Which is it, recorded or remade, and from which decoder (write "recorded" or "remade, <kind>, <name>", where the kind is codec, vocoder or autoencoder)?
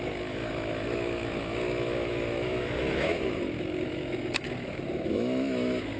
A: remade, autoencoder, DAC-VAE